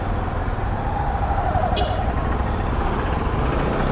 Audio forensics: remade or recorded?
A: recorded